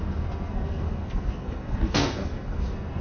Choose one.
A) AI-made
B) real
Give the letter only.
A